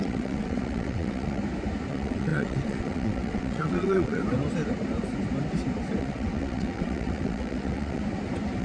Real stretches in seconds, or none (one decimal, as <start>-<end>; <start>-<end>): 1.4-1.9; 4.2-6.0; 8.0-8.6